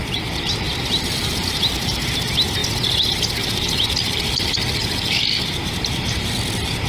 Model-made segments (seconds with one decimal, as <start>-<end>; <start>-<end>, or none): 0.0-1.7